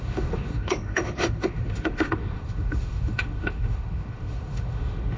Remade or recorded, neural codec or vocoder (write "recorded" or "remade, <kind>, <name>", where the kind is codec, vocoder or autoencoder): remade, autoencoder, DAC-VAE